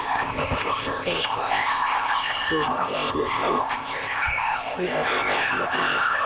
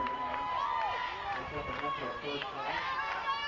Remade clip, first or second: first